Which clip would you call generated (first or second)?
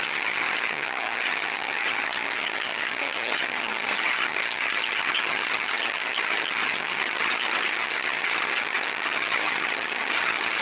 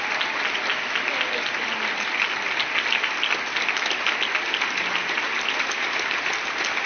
first